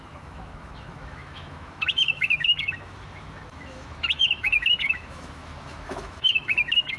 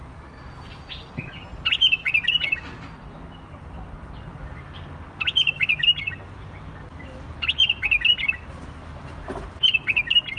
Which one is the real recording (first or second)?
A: second